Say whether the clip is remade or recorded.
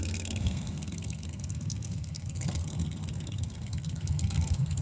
remade